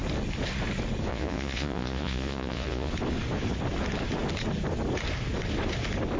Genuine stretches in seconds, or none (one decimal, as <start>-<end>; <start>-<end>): 0.0-1.1; 2.9-6.2